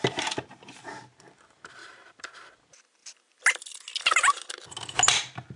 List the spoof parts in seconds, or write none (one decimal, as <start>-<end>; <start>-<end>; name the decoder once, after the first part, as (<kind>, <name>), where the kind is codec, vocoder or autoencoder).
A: 1.8-2.5 (vocoder, BigVGAN v2)